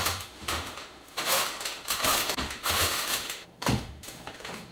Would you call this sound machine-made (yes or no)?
yes